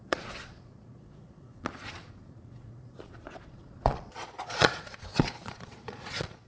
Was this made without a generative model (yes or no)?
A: no